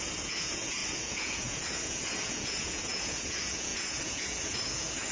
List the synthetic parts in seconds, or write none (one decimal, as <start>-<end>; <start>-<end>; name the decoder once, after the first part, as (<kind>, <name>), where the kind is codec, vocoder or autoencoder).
0.0-5.1 (vocoder, Vocos)